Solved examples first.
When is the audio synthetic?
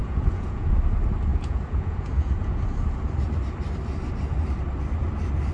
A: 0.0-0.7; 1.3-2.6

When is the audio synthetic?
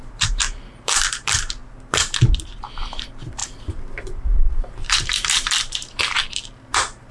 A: 0.0-1.6; 2.6-7.1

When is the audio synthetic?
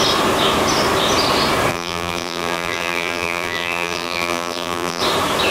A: 1.7-5.0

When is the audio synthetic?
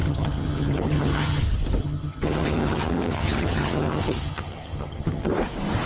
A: 0.0-1.4; 1.8-5.3